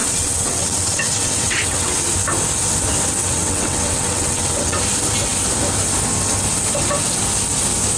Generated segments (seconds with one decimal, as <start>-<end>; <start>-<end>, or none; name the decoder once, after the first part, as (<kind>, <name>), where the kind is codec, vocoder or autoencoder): 0.0-2.0 (vocoder, WaveNeXt); 3.2-4.8